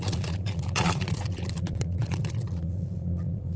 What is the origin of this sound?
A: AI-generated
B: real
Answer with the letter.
A